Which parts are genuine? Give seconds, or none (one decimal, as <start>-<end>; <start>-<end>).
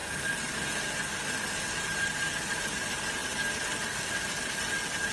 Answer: 0.0-5.1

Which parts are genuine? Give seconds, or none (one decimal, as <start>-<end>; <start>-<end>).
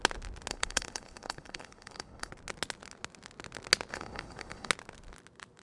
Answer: 0.0-0.5; 2.3-3.9; 4.7-5.6